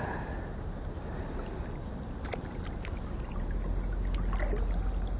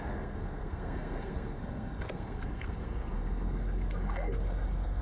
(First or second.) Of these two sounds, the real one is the first